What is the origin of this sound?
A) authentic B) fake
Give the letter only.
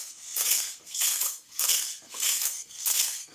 B